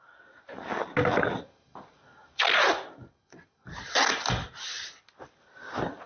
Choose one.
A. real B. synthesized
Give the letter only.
A